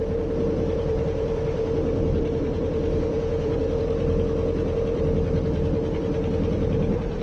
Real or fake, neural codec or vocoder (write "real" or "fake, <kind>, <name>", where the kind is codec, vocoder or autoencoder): fake, vocoder, BigVGAN v2